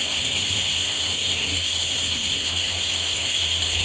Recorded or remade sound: remade